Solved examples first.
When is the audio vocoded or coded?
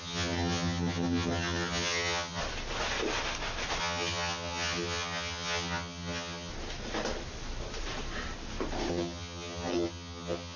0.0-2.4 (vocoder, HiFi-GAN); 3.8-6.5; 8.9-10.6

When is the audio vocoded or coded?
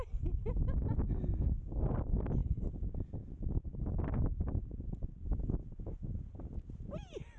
none